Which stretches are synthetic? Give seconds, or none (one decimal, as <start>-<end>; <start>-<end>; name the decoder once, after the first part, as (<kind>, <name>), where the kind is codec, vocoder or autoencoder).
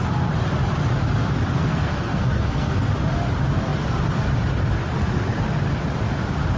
1.5-2.9 (codec, SNAC)